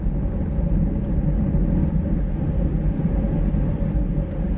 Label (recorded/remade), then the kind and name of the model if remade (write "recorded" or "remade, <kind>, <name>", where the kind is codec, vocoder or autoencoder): recorded